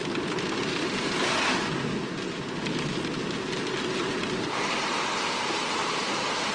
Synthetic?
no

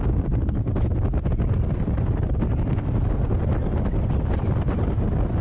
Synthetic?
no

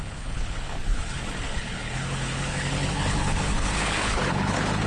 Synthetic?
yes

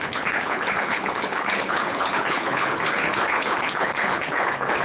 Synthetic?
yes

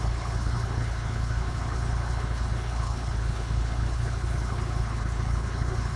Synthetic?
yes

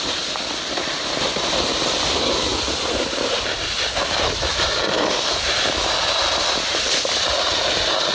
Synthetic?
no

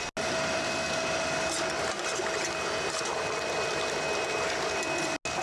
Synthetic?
no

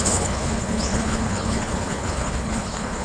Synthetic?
yes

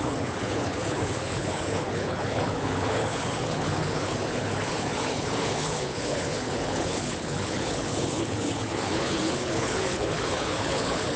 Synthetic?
yes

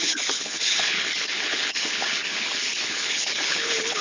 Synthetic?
yes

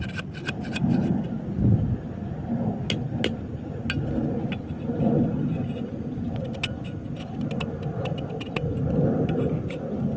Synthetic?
no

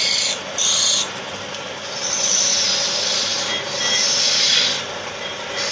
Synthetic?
no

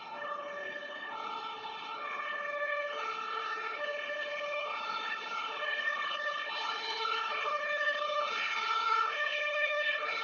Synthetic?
yes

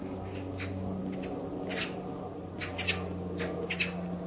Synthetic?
no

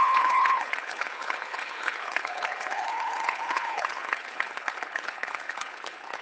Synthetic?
yes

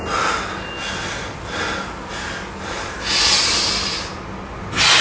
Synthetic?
no